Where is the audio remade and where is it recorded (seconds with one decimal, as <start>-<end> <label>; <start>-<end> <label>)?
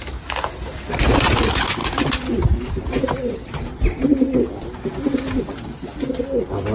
0.0-6.7 recorded